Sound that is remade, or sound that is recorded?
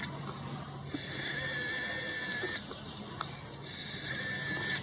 recorded